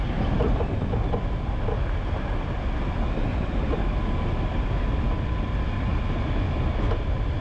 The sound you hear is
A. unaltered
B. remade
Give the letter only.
A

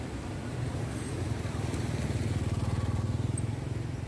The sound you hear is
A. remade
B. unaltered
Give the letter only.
B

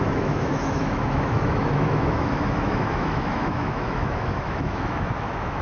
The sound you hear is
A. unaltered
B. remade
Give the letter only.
B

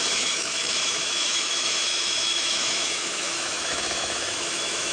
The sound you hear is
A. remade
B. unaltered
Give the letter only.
A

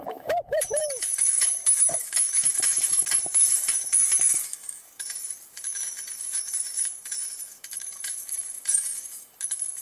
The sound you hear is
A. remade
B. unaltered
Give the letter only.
A